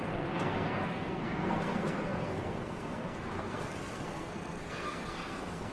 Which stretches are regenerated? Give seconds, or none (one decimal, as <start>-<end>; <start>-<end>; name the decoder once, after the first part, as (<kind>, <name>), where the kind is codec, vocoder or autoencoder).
0.0-5.7 (codec, SNAC)